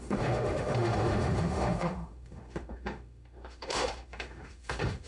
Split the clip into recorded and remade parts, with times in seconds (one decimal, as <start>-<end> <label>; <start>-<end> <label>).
0.0-5.1 remade